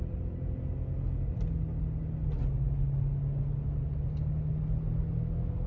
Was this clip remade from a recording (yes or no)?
no